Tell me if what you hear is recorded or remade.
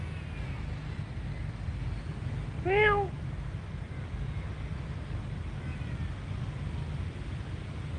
recorded